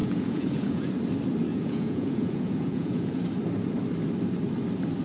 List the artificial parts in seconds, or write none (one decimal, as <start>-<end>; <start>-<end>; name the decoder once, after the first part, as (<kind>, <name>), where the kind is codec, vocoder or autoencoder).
0.0-0.9 (vocoder, Vocos); 1.5-3.2